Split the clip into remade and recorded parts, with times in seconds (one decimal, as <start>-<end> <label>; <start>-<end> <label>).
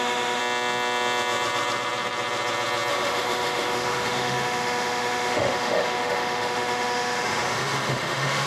0.0-0.4 remade; 0.4-2.9 recorded; 2.9-8.5 remade